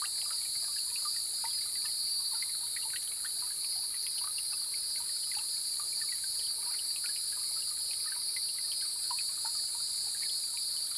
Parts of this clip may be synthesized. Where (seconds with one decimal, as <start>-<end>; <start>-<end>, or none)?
0.0-11.0